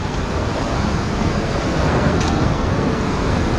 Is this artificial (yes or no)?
yes